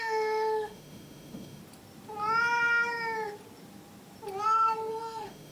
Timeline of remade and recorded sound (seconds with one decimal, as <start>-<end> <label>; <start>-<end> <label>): 0.0-1.6 remade; 1.6-4.9 recorded; 4.9-5.5 remade